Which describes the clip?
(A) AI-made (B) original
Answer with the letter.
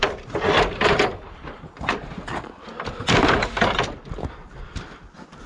A